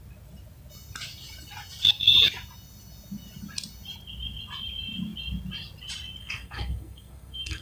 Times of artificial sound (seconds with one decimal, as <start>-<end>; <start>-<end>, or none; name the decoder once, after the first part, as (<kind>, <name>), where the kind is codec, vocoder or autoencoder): 6.2-7.6 (codec, SNAC)